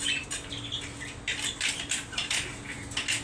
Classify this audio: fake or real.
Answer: real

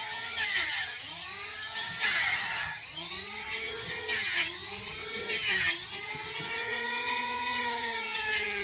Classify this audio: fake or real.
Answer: fake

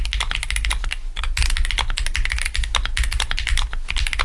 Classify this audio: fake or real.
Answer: real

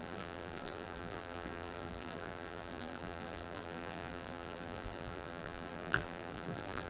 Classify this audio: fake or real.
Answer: fake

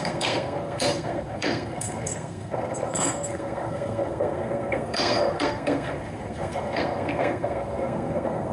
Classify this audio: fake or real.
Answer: fake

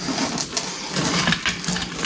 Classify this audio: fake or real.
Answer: real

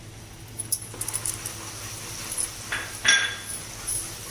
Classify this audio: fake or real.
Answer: real